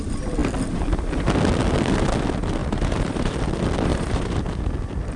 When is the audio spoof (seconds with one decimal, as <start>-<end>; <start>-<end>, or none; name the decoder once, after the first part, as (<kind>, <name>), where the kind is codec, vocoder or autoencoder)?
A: 2.6-3.4 (vocoder, BigVGAN v2); 3.9-4.6